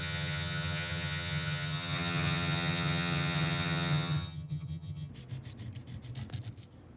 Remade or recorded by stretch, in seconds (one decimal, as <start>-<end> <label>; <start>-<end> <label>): 0.0-5.1 remade; 5.1-7.0 recorded